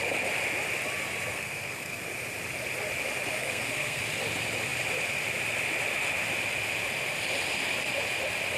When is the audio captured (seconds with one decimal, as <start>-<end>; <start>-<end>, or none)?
0.0-1.3; 2.0-3.4; 4.0-8.6